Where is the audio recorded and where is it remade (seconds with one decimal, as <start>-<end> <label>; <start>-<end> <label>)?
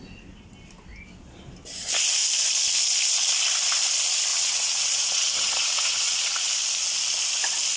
0.0-4.3 recorded; 4.3-6.5 remade; 6.5-7.8 recorded